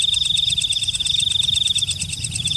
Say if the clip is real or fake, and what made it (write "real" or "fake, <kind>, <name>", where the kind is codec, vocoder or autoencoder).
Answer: real